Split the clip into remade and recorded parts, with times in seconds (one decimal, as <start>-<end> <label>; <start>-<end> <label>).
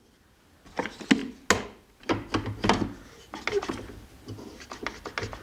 0.0-5.4 recorded